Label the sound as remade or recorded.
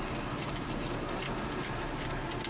recorded